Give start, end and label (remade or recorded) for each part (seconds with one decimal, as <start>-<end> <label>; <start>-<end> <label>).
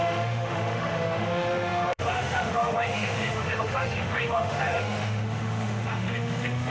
0.0-6.7 remade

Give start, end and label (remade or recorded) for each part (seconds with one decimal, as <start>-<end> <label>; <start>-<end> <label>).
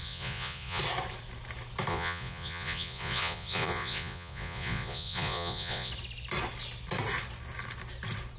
0.0-0.8 remade; 0.8-1.9 recorded; 1.9-5.9 remade; 5.9-8.4 recorded